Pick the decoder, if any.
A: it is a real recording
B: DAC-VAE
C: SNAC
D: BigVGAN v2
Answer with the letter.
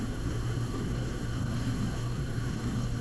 C